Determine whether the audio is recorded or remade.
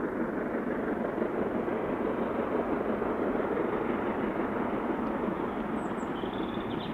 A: recorded